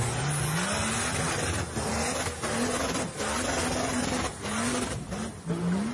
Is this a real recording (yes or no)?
yes